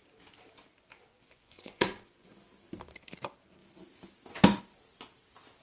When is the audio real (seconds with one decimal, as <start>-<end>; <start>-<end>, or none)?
0.0-1.1; 2.5-5.6